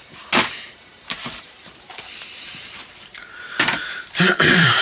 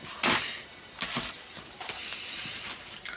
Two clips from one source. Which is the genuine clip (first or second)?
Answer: second